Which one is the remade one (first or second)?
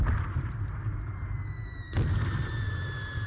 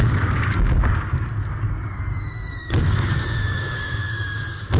second